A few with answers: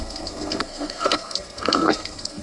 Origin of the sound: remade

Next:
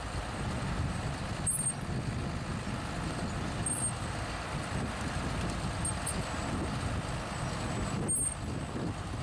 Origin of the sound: recorded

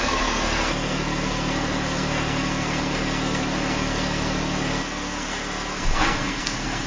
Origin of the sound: remade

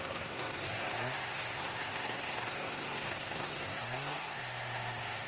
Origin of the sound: remade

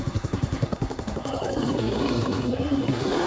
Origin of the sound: remade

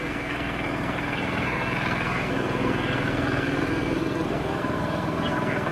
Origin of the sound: remade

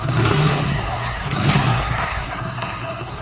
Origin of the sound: remade